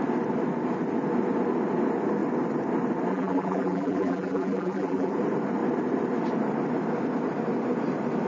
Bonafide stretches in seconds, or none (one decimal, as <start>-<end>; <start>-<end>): 0.0-3.1; 5.1-8.3